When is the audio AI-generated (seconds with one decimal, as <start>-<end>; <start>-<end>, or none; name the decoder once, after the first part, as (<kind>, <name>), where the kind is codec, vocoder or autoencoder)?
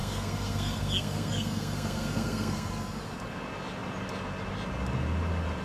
0.0-2.7 (codec, SNAC)